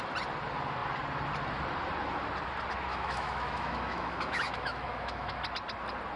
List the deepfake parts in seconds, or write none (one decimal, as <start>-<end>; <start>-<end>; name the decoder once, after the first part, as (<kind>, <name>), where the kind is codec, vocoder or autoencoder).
2.9-5.4 (autoencoder, DAC-VAE)